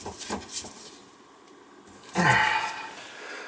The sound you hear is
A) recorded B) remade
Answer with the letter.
A